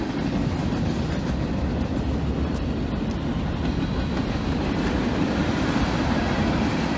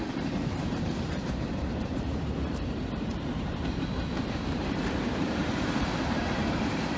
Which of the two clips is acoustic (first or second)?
first